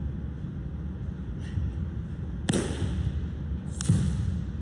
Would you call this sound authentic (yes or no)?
yes